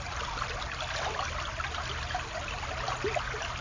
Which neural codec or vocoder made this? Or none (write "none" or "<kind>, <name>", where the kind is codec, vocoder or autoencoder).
none